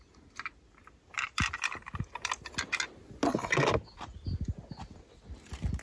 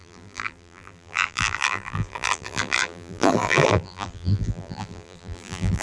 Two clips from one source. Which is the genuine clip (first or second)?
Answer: first